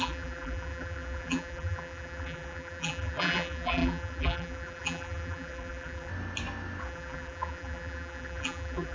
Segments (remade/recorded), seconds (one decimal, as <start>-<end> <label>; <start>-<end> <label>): 0.0-6.1 remade; 6.1-6.8 recorded; 6.8-8.9 remade